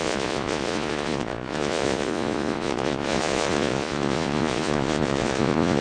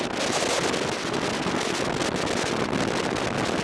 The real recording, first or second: second